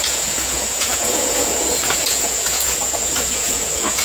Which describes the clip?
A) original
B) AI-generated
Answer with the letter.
B